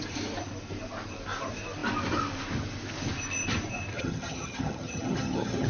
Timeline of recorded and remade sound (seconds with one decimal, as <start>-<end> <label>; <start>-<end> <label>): 0.0-3.9 recorded; 3.9-5.7 remade